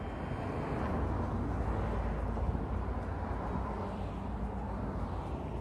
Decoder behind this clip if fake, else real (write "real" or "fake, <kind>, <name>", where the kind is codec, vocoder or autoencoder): real